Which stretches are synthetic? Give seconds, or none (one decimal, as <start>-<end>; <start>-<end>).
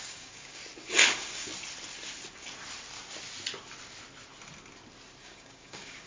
0.0-0.6; 1.1-1.5; 5.2-6.1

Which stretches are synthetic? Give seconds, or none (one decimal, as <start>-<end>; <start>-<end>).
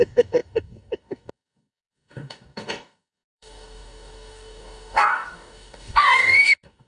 0.0-6.9